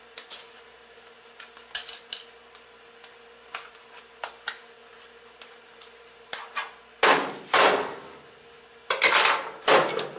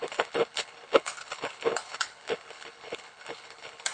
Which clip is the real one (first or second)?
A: first